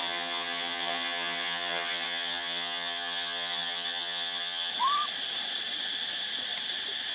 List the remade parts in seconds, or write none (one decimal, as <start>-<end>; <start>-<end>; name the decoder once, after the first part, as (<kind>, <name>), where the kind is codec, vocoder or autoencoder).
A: 0.0-4.7 (vocoder, HiFi-GAN)